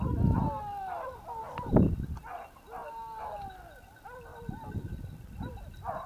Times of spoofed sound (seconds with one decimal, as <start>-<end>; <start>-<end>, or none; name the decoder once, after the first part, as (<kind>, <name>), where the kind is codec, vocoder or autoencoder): 4.3-5.5 (vocoder, BigVGAN v2)